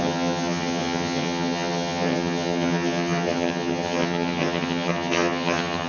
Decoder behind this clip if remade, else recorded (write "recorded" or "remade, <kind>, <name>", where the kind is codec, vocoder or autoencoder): remade, vocoder, HiFi-GAN